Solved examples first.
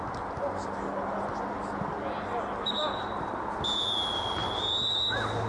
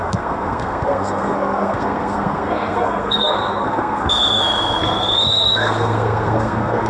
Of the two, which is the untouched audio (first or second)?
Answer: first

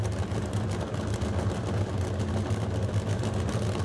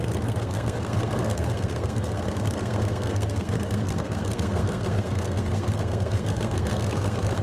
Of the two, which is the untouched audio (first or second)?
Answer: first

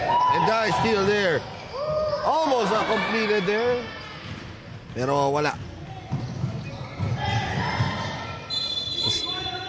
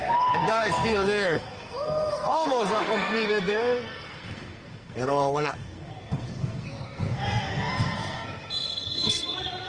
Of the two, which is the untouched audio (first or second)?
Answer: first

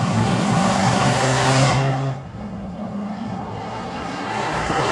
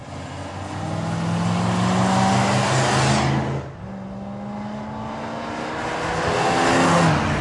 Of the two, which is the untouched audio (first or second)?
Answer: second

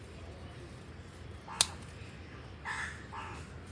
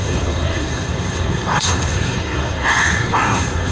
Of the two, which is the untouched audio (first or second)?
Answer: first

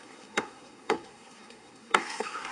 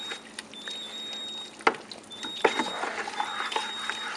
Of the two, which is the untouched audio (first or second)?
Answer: second